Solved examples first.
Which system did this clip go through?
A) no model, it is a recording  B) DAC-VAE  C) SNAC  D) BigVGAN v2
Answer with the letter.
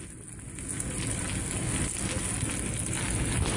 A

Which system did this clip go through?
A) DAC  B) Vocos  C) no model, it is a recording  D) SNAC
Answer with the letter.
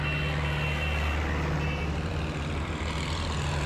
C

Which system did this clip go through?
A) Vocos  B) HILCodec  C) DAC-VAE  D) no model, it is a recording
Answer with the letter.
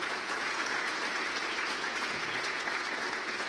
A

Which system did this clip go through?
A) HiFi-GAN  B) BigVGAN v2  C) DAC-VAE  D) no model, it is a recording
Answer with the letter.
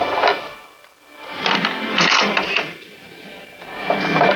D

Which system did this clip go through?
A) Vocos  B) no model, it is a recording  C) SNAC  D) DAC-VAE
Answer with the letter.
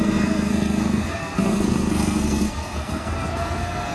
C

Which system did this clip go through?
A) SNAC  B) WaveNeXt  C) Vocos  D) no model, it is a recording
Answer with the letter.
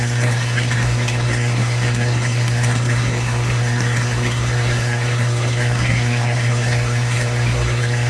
A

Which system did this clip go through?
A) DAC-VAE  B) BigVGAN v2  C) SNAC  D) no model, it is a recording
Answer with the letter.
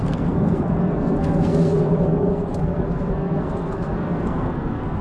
C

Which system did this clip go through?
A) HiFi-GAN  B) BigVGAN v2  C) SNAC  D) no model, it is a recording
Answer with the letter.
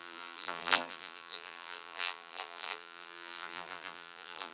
B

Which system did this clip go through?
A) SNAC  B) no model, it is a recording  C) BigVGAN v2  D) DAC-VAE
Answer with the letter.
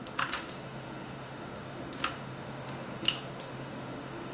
D